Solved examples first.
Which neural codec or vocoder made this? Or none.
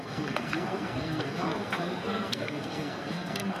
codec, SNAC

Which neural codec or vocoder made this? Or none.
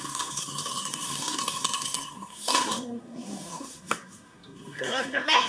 codec, SNAC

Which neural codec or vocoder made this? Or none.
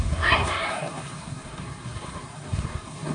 codec, SNAC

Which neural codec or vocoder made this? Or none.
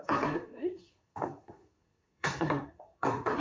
codec, SNAC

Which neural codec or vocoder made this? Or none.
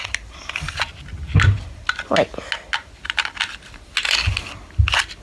none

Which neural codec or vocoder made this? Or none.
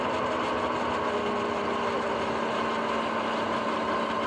none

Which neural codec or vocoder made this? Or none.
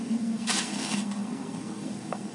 codec, SNAC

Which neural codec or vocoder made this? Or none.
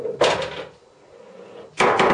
none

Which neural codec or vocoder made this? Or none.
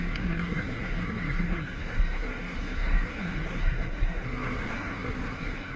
codec, SNAC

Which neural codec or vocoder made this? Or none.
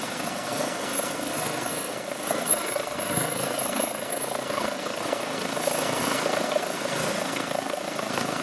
codec, SNAC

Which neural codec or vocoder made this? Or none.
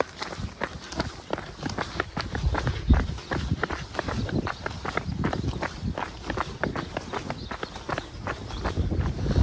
none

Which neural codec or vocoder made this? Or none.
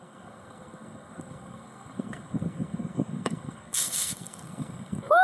codec, SNAC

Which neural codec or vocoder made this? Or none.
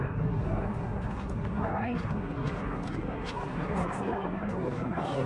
codec, SNAC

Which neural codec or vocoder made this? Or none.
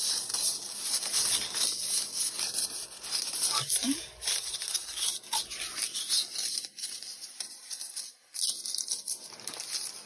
none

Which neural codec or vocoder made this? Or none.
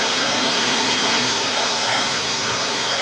codec, SNAC